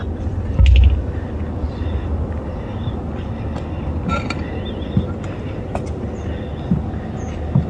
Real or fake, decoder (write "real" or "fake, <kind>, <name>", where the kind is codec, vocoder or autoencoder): real